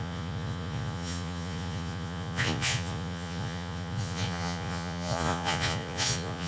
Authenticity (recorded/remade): remade